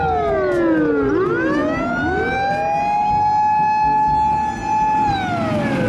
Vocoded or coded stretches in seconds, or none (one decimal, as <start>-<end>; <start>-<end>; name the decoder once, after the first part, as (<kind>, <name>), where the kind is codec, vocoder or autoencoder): none